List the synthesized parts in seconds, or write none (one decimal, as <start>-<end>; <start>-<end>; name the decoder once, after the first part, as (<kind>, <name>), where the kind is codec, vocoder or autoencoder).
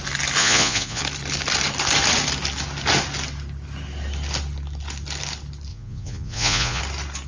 0.4-1.0 (vocoder, Vocos); 5.7-6.8